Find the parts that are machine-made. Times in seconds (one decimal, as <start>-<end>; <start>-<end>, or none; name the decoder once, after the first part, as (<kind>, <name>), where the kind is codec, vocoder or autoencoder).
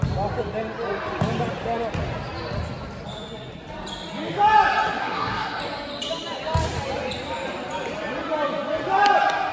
5.0-5.6 (codec, SNAC)